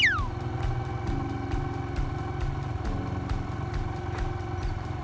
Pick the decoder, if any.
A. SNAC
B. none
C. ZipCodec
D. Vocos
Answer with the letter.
B